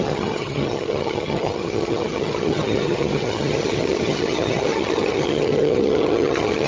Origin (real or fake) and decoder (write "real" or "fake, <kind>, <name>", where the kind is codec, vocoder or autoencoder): fake, vocoder, HiFi-GAN